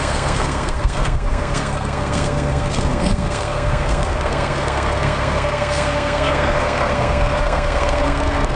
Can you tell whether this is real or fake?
fake